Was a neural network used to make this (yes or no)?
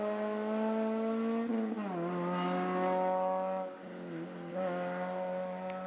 no